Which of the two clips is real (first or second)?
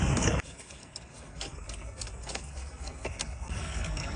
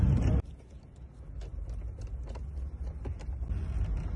second